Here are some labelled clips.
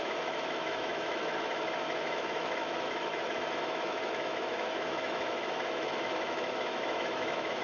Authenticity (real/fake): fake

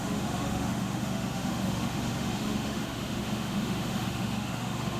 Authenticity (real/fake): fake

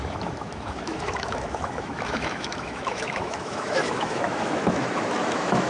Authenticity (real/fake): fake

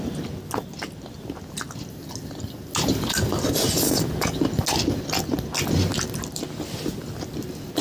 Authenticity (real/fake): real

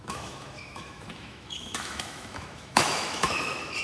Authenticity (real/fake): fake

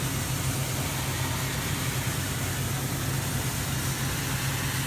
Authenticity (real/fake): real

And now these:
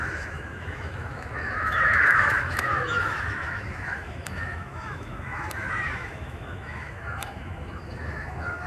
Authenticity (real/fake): fake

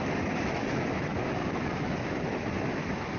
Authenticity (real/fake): fake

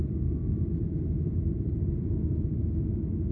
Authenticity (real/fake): real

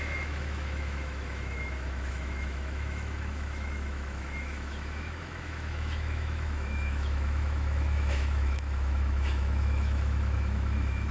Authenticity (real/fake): fake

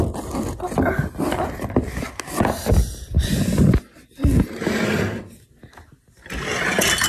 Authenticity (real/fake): real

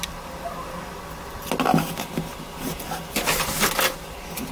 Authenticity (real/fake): real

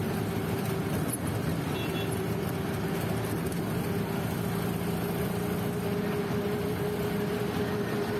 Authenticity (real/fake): real